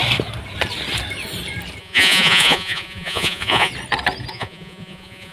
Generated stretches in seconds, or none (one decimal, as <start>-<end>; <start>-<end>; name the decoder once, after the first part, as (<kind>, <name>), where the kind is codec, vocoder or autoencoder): 1.8-3.7 (vocoder, Vocos); 4.3-5.3